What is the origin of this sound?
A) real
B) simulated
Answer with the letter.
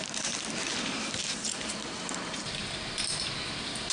B